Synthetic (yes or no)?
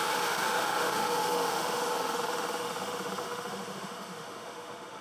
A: yes